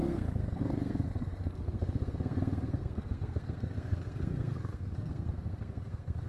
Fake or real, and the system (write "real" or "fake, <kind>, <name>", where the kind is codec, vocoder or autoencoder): fake, codec, SNAC